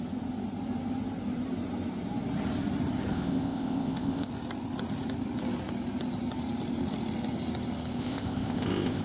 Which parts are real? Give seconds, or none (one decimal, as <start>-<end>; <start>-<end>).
0.0-3.1; 4.3-8.0